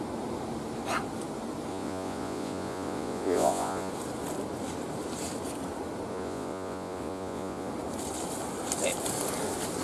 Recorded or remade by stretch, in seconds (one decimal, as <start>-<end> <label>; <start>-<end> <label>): 0.0-1.7 recorded; 1.7-3.9 remade; 3.9-6.1 recorded; 6.1-7.7 remade; 7.7-9.8 recorded

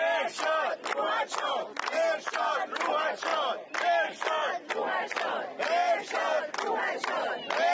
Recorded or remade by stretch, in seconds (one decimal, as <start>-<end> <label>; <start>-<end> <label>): 0.0-2.3 recorded; 2.3-2.9 remade; 2.9-5.8 recorded; 5.8-6.4 remade; 6.4-7.7 recorded